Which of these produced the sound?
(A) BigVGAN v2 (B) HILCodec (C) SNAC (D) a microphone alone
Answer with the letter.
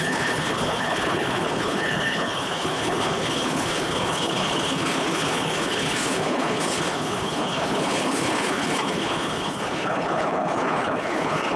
B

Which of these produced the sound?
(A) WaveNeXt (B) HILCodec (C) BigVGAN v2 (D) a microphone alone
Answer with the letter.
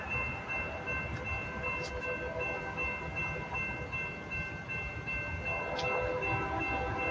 D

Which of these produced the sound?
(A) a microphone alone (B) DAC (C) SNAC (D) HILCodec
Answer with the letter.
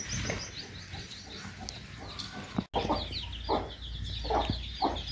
A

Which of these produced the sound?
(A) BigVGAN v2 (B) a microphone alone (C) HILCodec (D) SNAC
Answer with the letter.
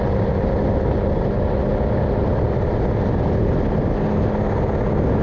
B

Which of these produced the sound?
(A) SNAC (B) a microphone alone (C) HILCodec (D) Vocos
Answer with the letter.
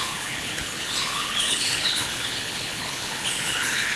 C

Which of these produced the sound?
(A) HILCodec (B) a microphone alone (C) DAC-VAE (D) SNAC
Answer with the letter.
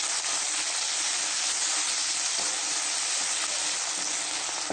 B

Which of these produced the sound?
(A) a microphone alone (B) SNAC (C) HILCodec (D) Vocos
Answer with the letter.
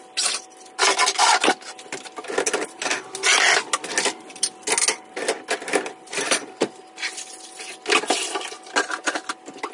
A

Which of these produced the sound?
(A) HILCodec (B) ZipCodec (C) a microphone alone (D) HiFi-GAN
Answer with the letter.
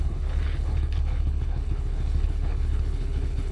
A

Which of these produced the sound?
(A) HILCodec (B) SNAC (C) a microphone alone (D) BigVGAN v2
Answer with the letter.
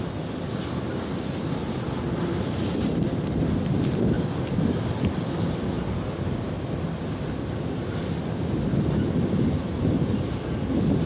C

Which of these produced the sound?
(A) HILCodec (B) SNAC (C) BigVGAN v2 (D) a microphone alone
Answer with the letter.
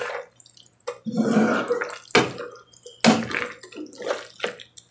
D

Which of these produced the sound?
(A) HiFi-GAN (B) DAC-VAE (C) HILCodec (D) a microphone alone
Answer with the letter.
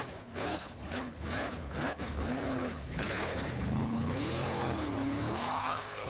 C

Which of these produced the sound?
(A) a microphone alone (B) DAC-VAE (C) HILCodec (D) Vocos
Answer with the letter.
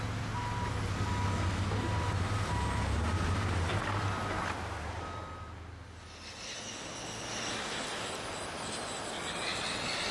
A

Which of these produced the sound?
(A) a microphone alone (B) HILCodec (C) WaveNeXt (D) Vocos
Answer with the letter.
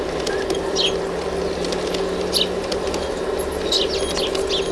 A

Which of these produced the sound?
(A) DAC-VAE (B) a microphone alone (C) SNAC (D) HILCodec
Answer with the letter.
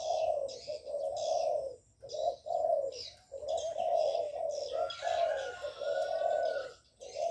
B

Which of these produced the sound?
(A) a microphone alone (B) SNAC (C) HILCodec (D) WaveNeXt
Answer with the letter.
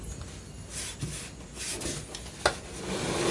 A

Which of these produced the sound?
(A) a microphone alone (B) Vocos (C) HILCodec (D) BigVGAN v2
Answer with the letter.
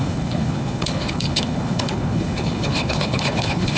C